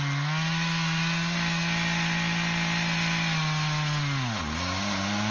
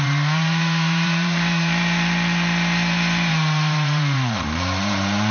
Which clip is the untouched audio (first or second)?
first